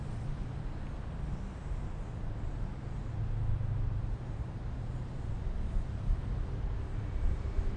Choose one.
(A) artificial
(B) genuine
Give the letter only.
B